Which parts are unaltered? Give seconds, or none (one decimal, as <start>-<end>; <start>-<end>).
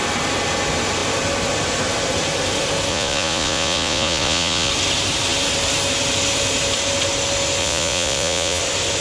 0.0-2.9; 4.7-7.6; 8.6-9.0